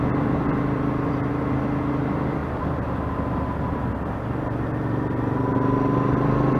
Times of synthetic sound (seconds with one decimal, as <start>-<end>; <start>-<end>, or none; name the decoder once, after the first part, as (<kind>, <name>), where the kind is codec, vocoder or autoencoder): none